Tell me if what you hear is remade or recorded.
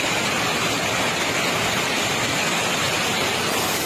recorded